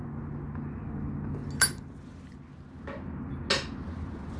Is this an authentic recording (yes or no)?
yes